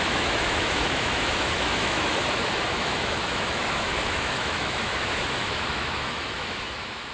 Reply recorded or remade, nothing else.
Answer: remade